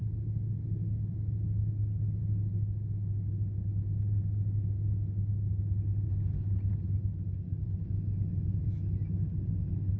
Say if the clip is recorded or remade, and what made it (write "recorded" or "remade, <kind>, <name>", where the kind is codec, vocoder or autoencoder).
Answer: recorded